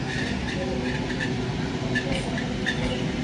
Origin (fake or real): real